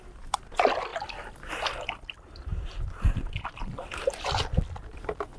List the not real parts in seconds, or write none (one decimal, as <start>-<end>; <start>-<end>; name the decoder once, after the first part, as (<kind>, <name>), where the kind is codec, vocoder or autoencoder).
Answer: 2.5-3.2 (vocoder, BigVGAN v2)